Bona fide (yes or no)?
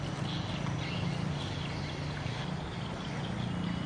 yes